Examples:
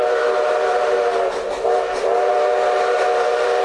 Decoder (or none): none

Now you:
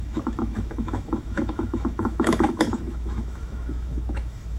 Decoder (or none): autoencoder, DAC-VAE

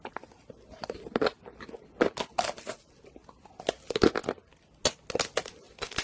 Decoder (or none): none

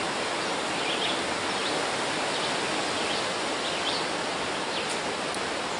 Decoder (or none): none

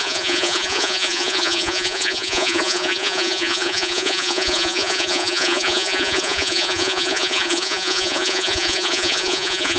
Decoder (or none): vocoder, Vocos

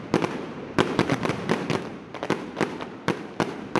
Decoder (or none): vocoder, BigVGAN v2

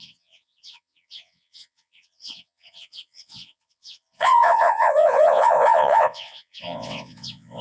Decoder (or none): vocoder, WaveNeXt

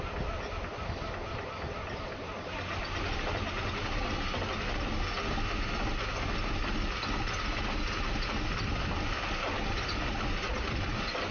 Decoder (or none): none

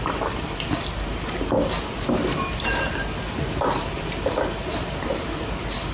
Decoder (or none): none